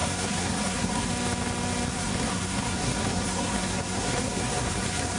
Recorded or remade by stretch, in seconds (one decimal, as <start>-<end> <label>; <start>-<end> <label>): 0.0-1.1 remade; 1.1-1.9 recorded; 1.9-5.2 remade